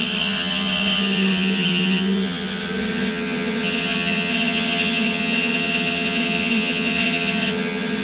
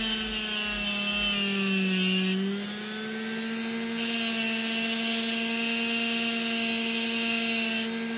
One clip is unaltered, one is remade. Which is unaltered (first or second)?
second